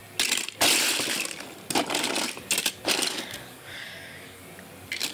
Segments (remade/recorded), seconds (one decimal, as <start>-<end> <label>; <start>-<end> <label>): 0.0-3.1 recorded; 3.1-4.4 remade; 4.4-5.1 recorded